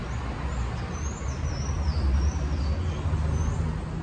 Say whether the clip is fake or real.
real